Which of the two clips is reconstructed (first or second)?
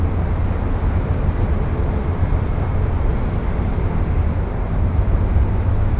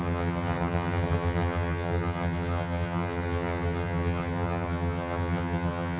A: second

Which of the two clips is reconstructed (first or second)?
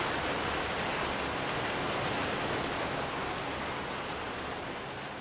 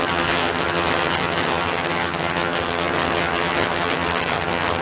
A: second